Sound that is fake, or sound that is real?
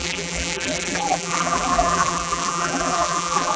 fake